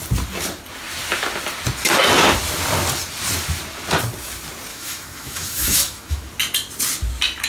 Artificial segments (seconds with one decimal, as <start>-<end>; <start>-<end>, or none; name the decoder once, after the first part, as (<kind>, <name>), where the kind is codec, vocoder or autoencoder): 4.7-6.3 (autoencoder, DAC-VAE)